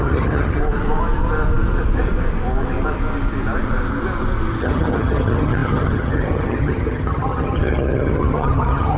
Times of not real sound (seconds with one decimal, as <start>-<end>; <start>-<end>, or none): 0.0-0.6; 4.6-9.0